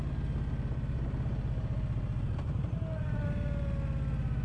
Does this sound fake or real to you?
real